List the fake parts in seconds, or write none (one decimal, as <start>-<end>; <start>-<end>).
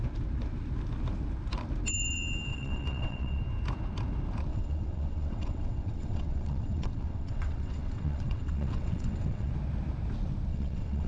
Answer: 2.5-3.4; 4.5-9.5; 10.5-11.1